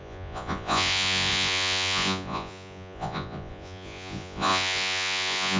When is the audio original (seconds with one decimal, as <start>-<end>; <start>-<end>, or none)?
none